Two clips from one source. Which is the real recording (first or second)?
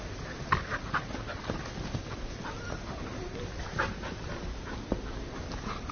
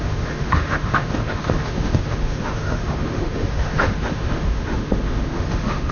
first